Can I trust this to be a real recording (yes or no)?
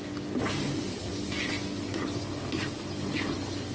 yes